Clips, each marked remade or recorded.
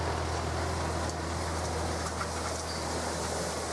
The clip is recorded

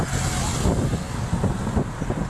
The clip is recorded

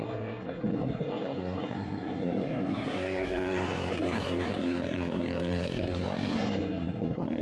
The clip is remade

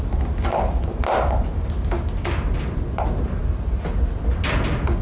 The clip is recorded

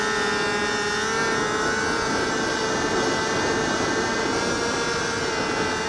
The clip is recorded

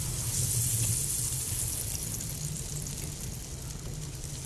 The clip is recorded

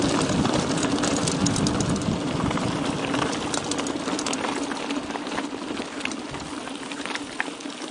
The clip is recorded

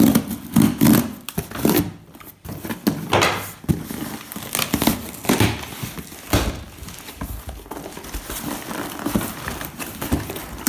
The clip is recorded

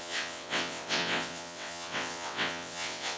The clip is remade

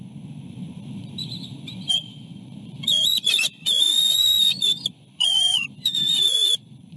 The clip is remade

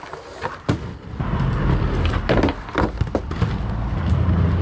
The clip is recorded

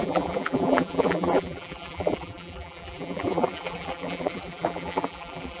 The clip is remade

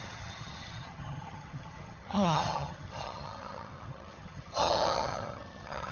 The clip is remade